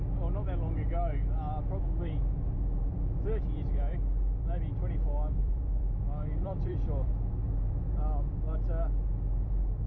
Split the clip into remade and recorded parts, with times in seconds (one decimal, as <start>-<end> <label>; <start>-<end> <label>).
0.0-5.4 recorded; 5.4-7.1 remade; 7.1-9.9 recorded